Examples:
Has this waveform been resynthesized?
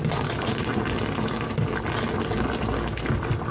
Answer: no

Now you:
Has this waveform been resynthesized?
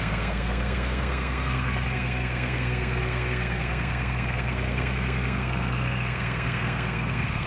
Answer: yes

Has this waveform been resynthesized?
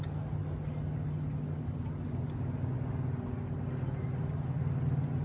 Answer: no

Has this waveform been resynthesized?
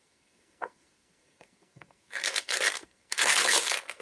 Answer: yes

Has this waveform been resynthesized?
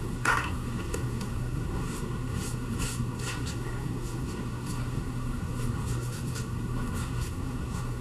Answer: yes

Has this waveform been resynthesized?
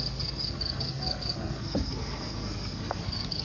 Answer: yes